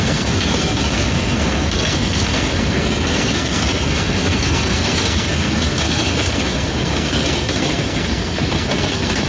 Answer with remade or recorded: remade